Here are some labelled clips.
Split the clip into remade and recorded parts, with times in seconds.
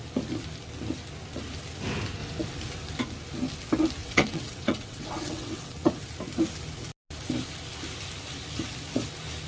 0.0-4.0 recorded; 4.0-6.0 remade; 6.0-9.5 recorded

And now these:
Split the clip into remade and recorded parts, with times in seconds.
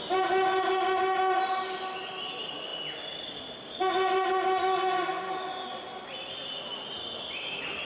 0.0-7.8 recorded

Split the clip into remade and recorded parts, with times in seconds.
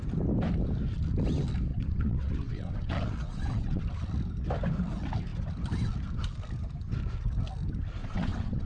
0.0-1.7 recorded; 1.7-3.8 remade; 3.8-8.0 recorded; 8.0-8.7 remade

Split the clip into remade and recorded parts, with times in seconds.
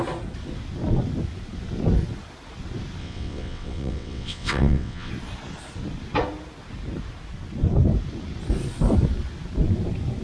0.0-3.0 recorded; 3.0-5.1 remade; 5.1-10.2 recorded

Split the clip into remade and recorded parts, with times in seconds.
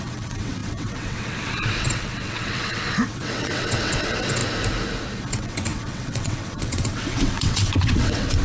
0.0-4.4 remade; 4.4-5.3 recorded; 5.3-8.4 remade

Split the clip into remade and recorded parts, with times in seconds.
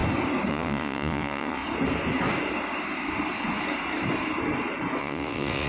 0.0-0.5 recorded; 0.5-1.6 remade; 1.6-5.0 recorded; 5.0-5.7 remade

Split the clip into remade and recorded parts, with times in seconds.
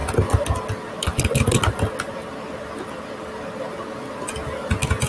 0.0-5.1 recorded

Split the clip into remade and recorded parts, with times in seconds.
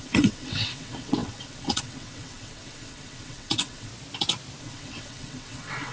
0.0-3.9 remade; 3.9-4.6 recorded; 4.6-5.9 remade